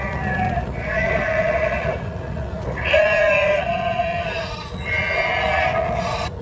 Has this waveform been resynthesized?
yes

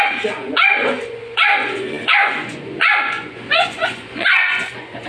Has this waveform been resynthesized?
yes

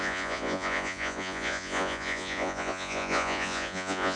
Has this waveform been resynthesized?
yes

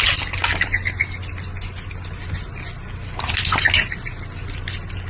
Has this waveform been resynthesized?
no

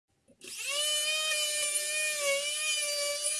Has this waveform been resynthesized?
no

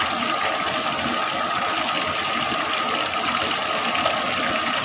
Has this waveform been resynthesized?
no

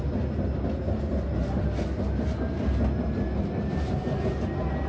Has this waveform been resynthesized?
no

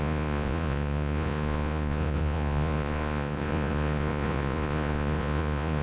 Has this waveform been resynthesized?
yes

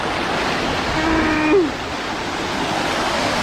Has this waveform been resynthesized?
no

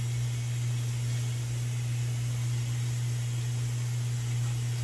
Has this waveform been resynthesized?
no